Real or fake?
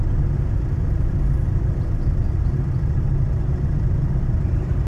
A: fake